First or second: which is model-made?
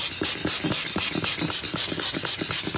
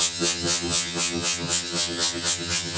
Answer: second